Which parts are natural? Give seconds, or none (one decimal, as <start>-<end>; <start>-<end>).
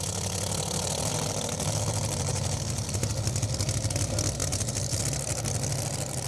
0.0-2.3; 3.1-4.4; 5.0-6.3